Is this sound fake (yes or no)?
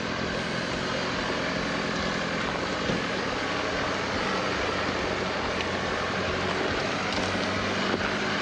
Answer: no